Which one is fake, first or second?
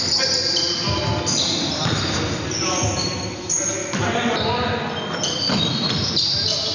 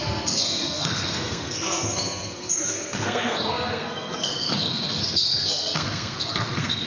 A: second